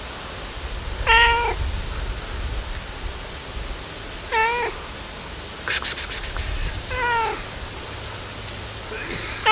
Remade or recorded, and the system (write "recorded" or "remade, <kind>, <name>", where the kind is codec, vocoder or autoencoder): recorded